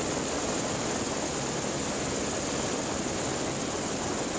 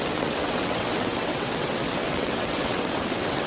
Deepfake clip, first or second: second